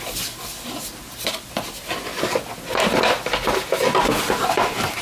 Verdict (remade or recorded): recorded